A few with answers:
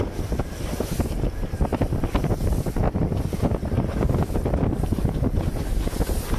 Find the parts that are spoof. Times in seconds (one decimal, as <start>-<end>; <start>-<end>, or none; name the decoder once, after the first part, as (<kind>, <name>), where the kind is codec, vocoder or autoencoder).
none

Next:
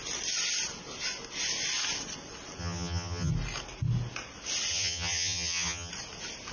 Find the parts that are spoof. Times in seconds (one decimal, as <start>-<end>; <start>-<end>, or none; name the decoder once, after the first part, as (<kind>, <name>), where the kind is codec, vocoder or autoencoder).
2.6-3.3 (vocoder, HiFi-GAN); 4.7-5.9

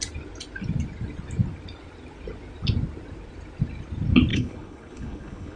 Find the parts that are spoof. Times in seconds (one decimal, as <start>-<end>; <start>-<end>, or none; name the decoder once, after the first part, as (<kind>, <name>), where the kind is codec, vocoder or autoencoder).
4.3-5.6 (codec, HILCodec)